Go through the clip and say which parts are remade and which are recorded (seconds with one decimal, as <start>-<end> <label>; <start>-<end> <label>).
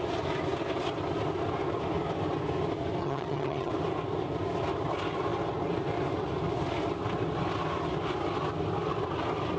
0.0-3.0 recorded; 3.0-3.7 remade; 3.7-9.6 recorded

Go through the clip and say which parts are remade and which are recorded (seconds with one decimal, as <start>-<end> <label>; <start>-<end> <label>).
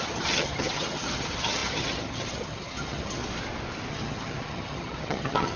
0.0-3.2 remade; 3.2-3.9 recorded; 3.9-5.6 remade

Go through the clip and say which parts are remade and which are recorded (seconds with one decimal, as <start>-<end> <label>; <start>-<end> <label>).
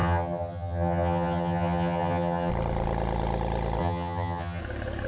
0.0-2.5 remade; 2.5-3.8 recorded; 3.8-4.6 remade; 4.6-5.1 recorded